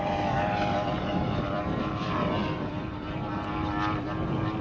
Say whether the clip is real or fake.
fake